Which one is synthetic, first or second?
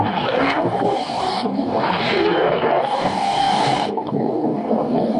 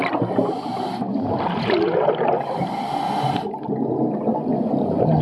first